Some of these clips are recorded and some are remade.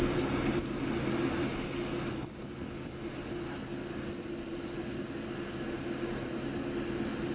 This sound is recorded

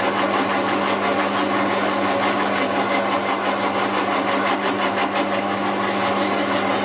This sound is recorded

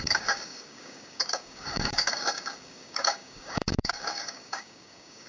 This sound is remade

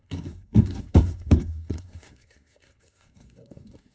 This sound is remade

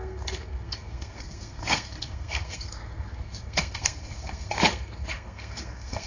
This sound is remade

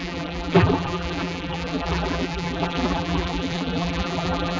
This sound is remade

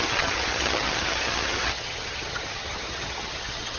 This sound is remade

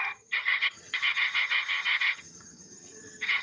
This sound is remade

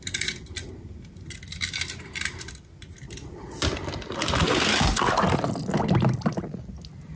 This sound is recorded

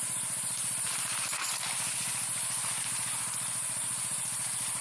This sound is remade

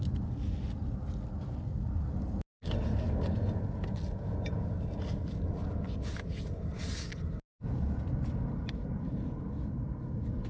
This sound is recorded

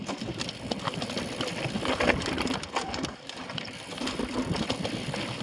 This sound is recorded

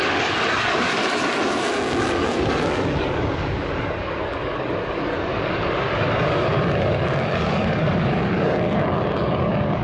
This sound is remade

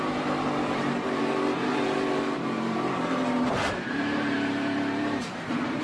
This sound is remade